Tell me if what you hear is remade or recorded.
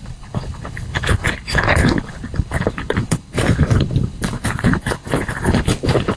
remade